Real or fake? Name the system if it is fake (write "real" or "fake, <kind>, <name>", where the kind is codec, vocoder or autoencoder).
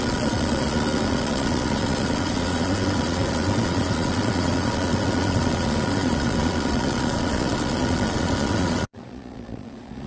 fake, vocoder, Vocos